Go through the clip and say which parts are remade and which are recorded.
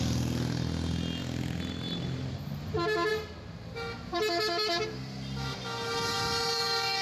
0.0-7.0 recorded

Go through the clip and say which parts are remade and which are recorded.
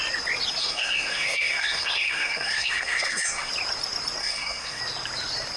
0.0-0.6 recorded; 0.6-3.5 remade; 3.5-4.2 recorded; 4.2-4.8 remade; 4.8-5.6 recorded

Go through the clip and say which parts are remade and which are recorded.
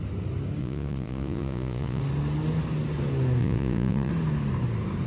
0.0-0.6 recorded; 0.6-2.0 remade; 2.0-3.4 recorded; 3.4-4.1 remade; 4.1-5.1 recorded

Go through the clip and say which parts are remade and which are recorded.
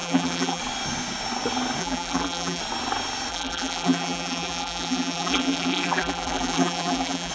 0.0-0.6 remade; 0.6-1.8 recorded; 1.8-2.6 remade; 2.6-3.3 recorded; 3.3-7.3 remade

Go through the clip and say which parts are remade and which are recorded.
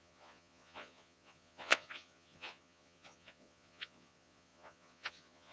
0.0-5.5 remade